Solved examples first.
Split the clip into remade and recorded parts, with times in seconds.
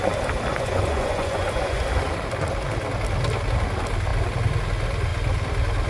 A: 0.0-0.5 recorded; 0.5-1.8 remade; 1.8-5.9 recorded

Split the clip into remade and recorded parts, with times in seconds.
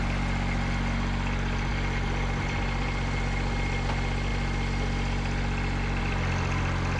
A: 0.0-7.0 recorded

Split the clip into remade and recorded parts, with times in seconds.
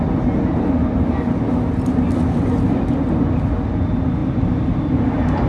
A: 0.0-5.5 recorded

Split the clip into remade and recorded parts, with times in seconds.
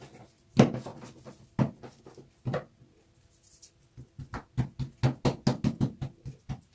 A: 0.0-6.7 recorded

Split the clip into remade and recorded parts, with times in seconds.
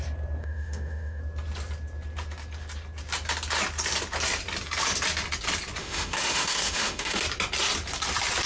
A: 0.0-0.4 recorded; 0.4-1.2 remade; 1.2-5.8 recorded; 5.8-7.2 remade; 7.2-8.5 recorded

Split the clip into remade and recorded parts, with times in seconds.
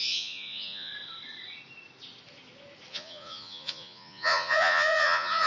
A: 0.0-0.9 remade; 0.9-2.9 recorded; 2.9-5.5 remade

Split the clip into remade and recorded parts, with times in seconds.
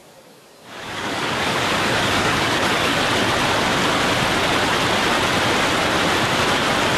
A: 0.0-3.0 remade; 3.0-7.0 recorded